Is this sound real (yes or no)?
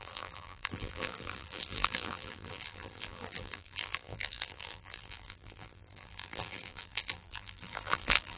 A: no